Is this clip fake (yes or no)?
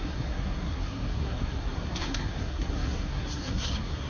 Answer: yes